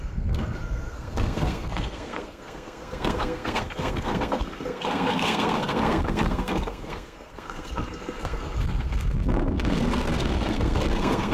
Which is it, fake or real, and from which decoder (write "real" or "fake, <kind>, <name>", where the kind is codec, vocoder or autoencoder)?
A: fake, codec, SNAC